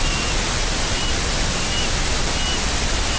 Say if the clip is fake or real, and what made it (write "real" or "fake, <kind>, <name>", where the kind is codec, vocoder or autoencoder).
fake, vocoder, BigVGAN v2